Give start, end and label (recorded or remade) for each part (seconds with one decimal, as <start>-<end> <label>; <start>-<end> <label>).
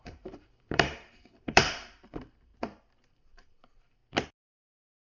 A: 0.0-2.5 remade; 2.5-3.1 recorded; 3.1-4.0 remade; 4.0-4.5 recorded; 4.5-5.2 remade